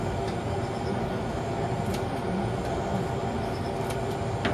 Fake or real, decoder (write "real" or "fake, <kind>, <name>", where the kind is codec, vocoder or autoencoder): real